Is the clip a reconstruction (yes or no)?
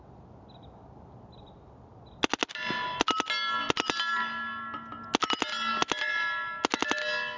no